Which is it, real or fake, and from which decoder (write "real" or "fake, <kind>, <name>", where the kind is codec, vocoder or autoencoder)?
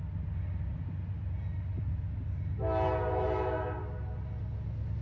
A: real